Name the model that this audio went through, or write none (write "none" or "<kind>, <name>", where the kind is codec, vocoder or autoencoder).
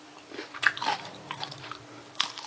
vocoder, BigVGAN v2